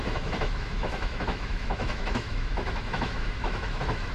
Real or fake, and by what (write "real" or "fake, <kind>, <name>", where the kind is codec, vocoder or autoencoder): fake, autoencoder, DAC-VAE